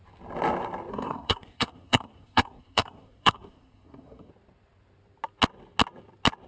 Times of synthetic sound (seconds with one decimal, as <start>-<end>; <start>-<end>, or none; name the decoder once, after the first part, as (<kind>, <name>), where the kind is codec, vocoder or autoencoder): 0.9-4.3 (codec, SNAC)